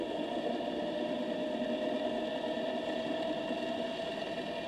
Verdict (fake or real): real